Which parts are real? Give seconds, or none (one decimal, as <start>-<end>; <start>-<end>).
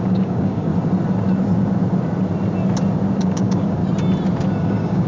0.7-3.2; 3.8-4.6